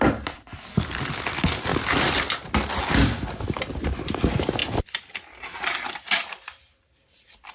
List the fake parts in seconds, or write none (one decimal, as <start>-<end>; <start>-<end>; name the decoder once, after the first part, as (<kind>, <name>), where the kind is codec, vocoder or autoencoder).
none